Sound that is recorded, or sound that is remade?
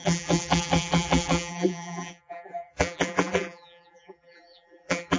remade